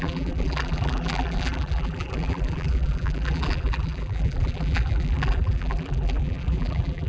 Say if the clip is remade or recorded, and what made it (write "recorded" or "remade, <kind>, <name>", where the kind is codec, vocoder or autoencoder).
remade, vocoder, BigVGAN v2